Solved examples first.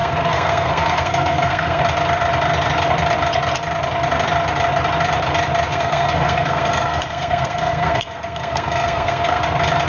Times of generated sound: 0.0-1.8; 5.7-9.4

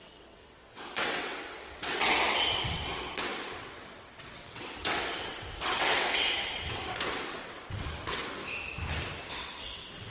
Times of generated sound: 0.0-8.4; 9.3-10.1

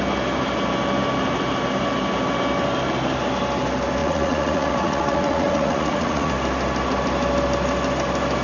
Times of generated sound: 4.0-6.3

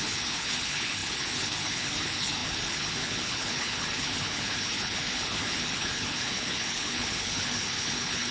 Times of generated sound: 0.0-8.3

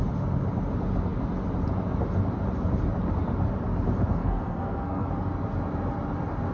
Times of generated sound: 4.2-5.1

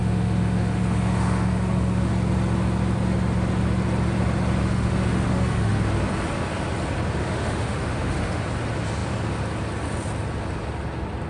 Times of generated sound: 0.0-2.1; 4.6-5.8; 7.2-8.4

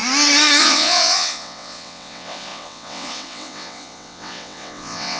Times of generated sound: 0.6-5.2